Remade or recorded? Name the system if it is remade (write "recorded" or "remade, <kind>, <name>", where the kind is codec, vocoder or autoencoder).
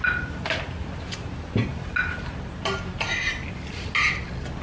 recorded